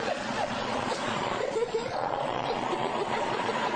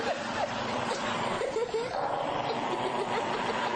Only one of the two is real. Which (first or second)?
second